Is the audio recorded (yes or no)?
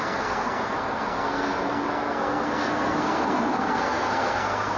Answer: no